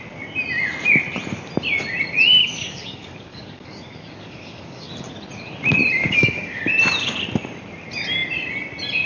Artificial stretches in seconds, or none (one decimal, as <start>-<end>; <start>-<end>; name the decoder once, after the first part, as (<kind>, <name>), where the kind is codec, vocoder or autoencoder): 2.4-4.9 (codec, DAC); 6.0-6.6